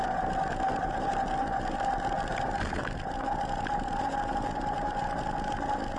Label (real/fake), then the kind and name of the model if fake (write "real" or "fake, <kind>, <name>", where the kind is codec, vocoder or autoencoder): real